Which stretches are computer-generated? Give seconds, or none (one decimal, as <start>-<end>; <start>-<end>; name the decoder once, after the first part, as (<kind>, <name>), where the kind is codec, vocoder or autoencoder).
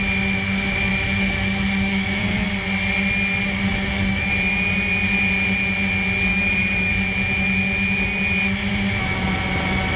0.9-2.2 (autoencoder, DAC-VAE); 3.7-4.3; 6.3-6.9